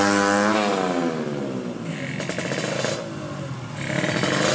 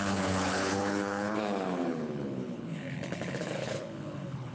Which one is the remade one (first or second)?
second